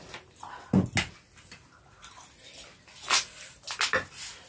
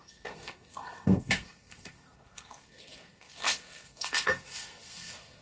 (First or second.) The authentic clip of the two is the first